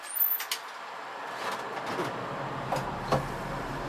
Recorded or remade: recorded